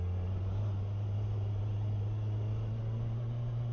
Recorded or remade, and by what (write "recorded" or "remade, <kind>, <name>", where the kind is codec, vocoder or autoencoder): recorded